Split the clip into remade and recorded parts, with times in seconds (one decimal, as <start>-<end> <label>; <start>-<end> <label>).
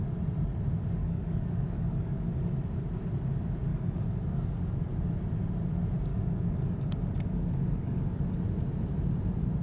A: 0.0-1.0 recorded; 1.0-2.5 remade; 2.5-3.7 recorded; 3.7-4.9 remade; 4.9-6.1 recorded; 6.1-8.2 remade; 8.2-9.6 recorded